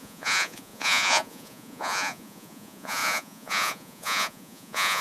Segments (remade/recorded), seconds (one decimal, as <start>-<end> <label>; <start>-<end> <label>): 0.0-5.0 remade